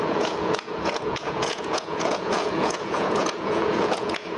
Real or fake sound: fake